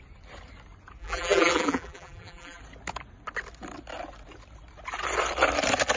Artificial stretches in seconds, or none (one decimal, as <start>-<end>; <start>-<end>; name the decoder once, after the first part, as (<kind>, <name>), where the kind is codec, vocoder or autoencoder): 1.0-2.6 (vocoder, BigVGAN v2)